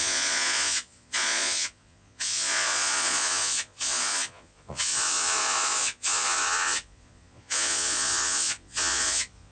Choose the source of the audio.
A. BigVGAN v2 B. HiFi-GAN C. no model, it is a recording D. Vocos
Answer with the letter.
D